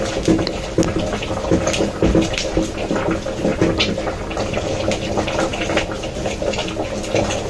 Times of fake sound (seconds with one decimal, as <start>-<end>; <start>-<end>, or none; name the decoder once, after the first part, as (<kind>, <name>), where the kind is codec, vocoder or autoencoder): none